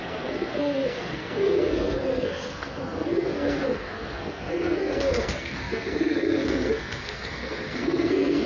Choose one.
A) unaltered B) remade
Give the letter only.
B